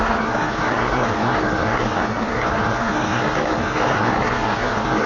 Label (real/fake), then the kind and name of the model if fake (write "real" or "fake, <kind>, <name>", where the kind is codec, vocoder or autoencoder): fake, codec, SNAC